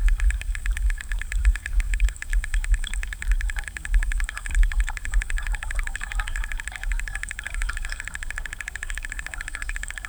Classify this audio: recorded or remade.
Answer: remade